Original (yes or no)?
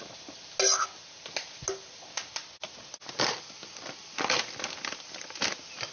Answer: yes